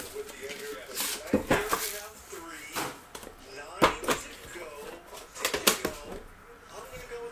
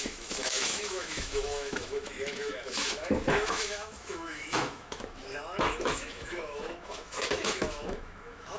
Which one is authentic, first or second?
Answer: first